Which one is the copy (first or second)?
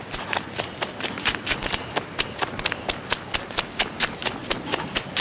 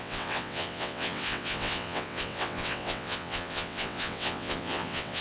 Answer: second